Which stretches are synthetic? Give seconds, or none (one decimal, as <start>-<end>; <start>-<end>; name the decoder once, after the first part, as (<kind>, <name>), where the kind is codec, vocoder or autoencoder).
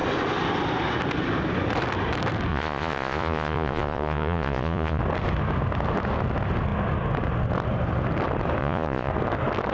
2.5-5.0 (vocoder, Vocos); 8.6-9.1